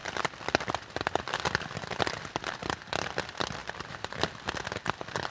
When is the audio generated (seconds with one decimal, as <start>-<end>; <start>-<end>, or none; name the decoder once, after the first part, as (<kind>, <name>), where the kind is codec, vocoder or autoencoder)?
3.6-4.3 (vocoder, BigVGAN v2)